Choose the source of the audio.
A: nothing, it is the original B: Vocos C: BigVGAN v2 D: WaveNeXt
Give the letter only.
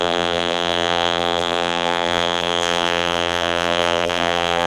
C